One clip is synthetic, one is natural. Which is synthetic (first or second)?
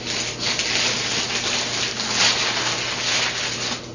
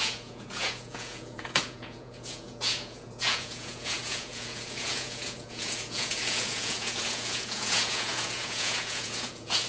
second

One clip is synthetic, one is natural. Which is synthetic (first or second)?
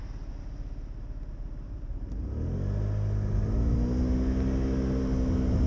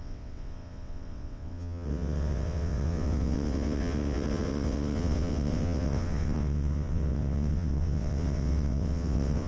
second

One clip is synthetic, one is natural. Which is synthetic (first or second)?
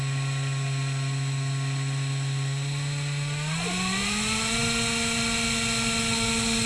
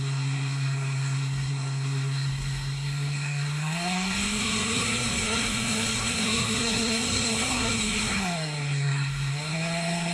second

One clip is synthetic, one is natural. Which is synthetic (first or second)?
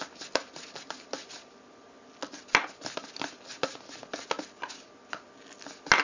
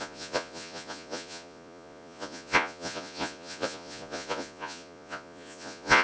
second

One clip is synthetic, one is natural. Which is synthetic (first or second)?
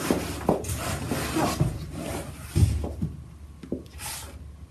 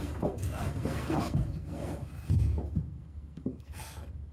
second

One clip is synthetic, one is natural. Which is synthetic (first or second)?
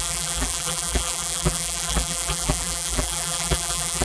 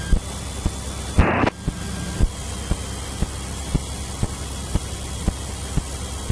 first